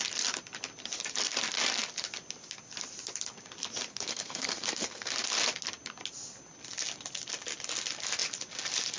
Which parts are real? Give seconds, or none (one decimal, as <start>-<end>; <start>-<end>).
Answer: 0.0-3.9; 5.1-9.0